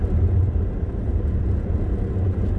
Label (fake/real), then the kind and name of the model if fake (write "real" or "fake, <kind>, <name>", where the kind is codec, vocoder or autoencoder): real